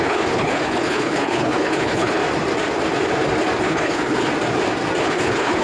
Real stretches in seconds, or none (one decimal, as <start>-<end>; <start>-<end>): 2.2-3.6; 4.3-5.0

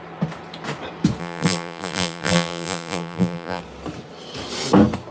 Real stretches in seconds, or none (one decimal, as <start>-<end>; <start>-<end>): 0.0-1.2; 3.6-5.1

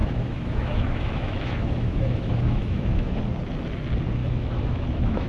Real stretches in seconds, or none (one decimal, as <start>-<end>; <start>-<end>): 3.2-4.2

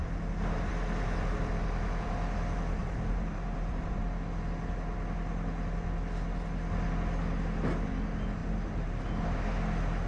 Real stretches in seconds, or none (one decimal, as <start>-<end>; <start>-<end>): 0.0-2.8; 4.0-8.4; 9.0-10.1

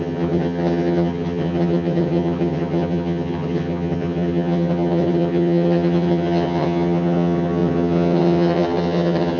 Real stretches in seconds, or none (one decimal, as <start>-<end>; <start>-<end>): none

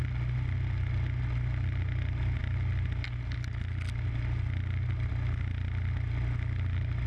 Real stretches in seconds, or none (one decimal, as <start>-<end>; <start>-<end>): 0.0-7.1

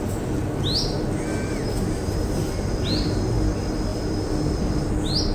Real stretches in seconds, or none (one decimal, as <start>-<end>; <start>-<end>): 0.0-5.3

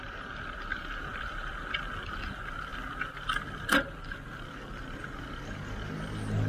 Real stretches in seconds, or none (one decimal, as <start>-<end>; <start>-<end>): 0.0-6.5